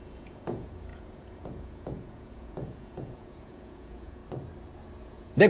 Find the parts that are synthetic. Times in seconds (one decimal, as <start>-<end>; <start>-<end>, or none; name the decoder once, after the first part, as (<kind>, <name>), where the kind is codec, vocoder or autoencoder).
0.0-4.2 (vocoder, Vocos); 5.0-5.5